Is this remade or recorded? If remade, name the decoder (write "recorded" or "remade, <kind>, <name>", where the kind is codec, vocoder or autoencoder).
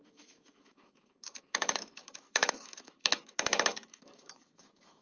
remade, autoencoder, DAC-VAE